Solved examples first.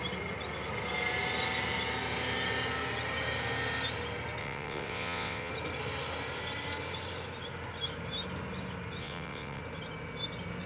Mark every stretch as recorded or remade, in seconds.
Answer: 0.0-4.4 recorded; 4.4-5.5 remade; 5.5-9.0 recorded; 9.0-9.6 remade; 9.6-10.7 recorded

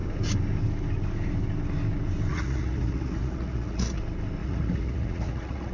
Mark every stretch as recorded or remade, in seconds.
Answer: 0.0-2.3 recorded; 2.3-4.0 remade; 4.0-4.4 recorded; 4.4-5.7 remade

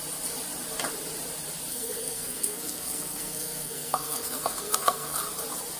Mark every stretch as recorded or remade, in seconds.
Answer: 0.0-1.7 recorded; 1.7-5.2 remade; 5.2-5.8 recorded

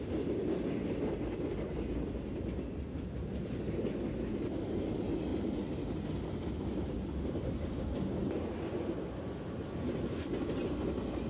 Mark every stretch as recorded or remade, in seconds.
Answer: 0.0-11.3 recorded